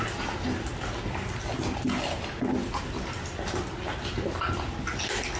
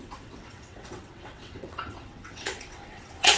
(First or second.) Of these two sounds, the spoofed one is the second